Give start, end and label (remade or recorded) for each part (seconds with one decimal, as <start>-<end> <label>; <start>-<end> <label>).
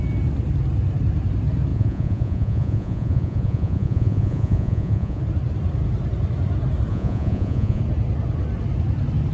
0.0-1.7 recorded; 1.7-5.2 remade; 5.2-6.9 recorded; 6.9-7.8 remade; 7.8-9.3 recorded